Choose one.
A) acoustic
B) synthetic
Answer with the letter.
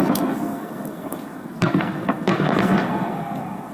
B